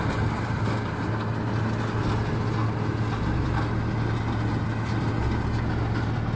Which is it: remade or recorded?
recorded